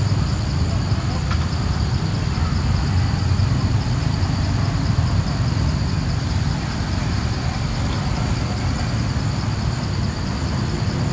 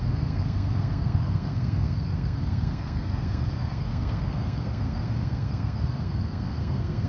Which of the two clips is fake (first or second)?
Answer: second